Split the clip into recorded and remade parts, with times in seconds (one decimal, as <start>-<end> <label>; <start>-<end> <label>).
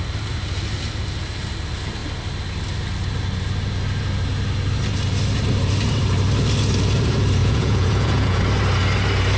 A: 0.0-7.4 recorded; 7.4-8.4 remade; 8.4-9.4 recorded